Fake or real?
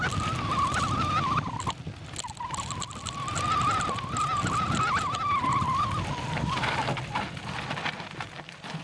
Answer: real